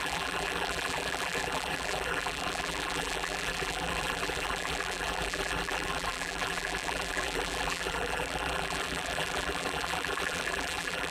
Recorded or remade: remade